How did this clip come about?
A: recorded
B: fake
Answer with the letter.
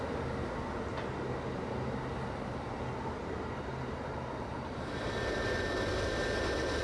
A